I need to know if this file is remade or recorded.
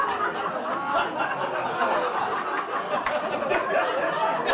recorded